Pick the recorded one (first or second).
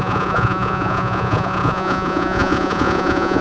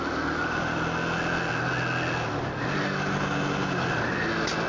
second